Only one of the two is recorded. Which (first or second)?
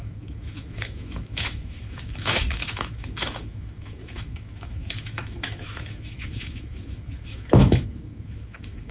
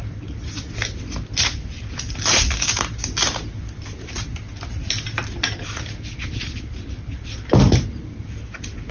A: second